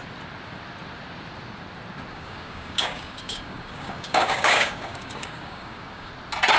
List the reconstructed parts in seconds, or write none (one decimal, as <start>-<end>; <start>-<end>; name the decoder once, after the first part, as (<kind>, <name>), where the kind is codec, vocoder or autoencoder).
2.1-6.1 (codec, DAC)

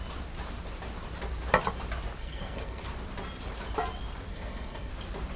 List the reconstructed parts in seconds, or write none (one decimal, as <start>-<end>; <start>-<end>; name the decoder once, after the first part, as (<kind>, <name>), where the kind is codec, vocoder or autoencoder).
2.2-2.8 (codec, SNAC); 4.3-4.9

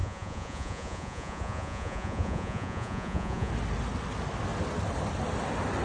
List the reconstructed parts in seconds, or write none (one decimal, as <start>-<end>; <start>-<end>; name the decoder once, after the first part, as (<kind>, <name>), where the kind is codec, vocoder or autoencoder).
0.0-3.5 (vocoder, Vocos)